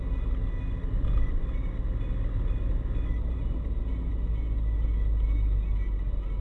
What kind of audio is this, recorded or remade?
recorded